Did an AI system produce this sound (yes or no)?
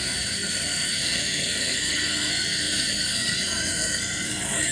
yes